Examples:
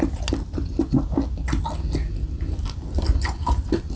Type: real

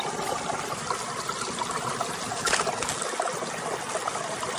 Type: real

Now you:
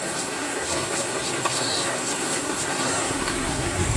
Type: fake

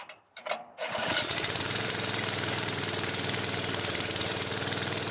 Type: fake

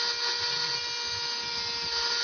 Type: real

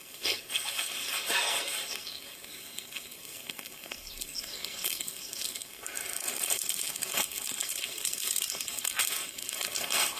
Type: fake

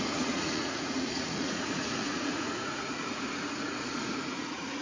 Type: fake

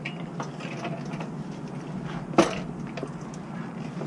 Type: real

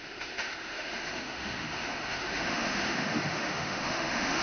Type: fake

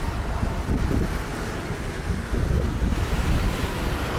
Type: real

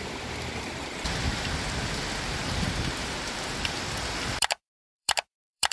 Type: fake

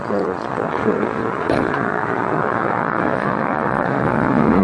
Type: fake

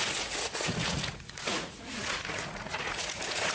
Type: fake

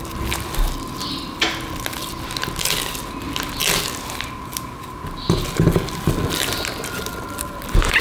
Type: real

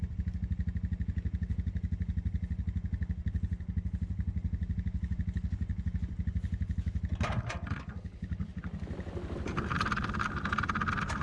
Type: real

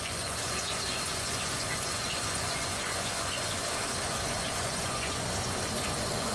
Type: fake